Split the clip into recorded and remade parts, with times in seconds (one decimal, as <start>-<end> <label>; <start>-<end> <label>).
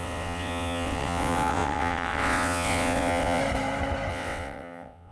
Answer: 0.0-3.4 remade; 3.4-4.1 recorded; 4.1-5.1 remade